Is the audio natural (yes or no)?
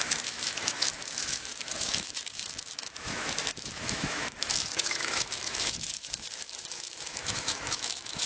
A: no